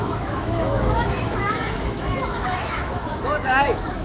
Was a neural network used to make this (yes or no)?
yes